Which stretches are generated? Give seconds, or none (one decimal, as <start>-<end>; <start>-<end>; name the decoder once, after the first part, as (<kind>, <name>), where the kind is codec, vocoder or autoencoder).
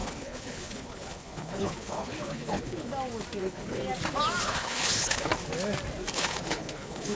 0.0-2.9 (codec, HILCodec); 3.4-3.8; 4.4-5.3; 6.1-7.2